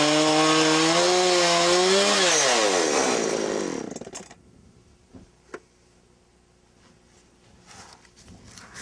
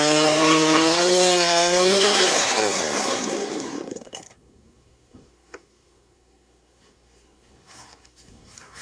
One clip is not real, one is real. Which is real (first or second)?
first